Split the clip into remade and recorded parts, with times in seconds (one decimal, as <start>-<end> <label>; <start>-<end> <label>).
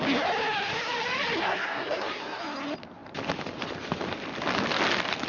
0.0-1.4 recorded; 1.4-2.4 remade; 2.4-5.3 recorded